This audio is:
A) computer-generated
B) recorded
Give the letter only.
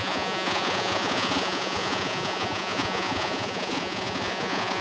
A